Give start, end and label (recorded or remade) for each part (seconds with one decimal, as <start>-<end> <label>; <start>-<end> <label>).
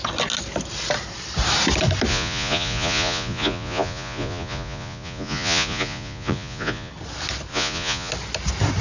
0.0-2.1 recorded; 2.1-6.9 remade; 6.9-7.5 recorded; 7.5-8.1 remade; 8.1-8.8 recorded